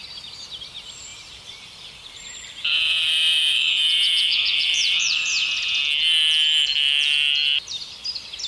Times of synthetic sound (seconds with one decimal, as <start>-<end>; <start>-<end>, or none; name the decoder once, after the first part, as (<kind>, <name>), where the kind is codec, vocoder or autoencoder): 1.1-5.8 (vocoder, BigVGAN v2)